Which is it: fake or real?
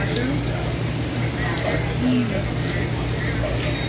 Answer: real